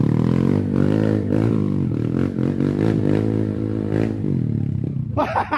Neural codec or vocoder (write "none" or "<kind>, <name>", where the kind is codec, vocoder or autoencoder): vocoder, BigVGAN v2